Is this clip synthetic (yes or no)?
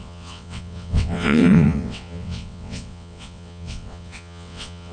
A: yes